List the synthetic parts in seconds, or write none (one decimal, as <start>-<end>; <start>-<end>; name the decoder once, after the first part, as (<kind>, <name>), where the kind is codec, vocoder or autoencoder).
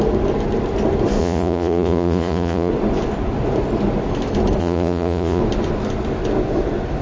1.2-2.7 (vocoder, Vocos); 4.6-5.4